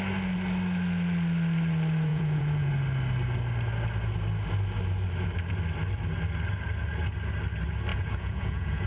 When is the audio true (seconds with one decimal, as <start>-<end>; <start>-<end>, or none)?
0.0-2.1; 2.7-7.9